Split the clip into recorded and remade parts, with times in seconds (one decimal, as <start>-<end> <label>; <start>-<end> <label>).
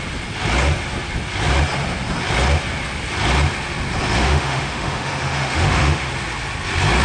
0.0-4.2 recorded; 4.2-6.1 remade; 6.1-7.0 recorded